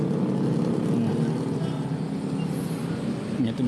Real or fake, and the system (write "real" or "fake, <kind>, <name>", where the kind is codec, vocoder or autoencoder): real